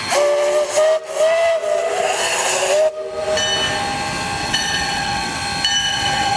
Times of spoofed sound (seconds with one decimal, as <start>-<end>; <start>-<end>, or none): 4.4-5.3; 5.8-6.4